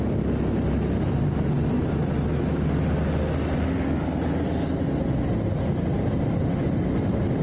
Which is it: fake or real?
real